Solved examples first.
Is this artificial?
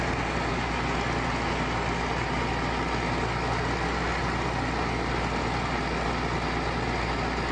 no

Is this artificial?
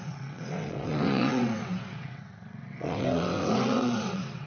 yes